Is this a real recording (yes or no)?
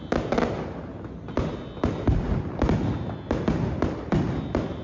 yes